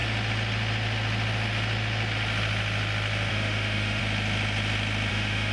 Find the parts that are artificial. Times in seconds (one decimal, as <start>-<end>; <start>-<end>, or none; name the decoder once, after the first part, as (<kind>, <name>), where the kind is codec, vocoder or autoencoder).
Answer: 3.3-4.0 (autoencoder, DAC-VAE); 5.1-5.5

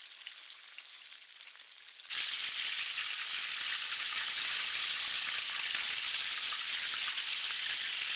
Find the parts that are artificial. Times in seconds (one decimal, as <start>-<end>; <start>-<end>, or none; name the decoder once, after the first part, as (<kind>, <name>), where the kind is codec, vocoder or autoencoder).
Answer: none

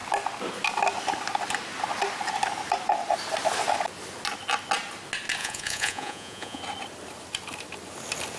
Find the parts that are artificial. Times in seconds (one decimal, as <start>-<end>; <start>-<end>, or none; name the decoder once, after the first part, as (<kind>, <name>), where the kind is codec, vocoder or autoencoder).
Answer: 5.4-6.6 (vocoder, Vocos)